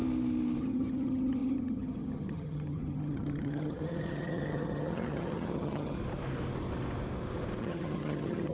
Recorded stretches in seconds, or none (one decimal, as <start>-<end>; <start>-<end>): 0.0-0.6; 6.0-7.6